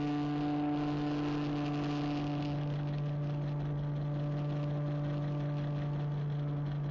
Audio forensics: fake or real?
real